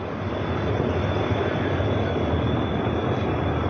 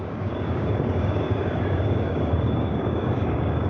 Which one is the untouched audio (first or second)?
first